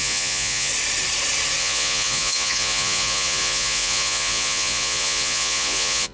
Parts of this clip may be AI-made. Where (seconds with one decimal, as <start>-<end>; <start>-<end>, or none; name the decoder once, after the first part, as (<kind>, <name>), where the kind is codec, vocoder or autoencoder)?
0.0-0.7 (vocoder, Vocos); 1.6-6.1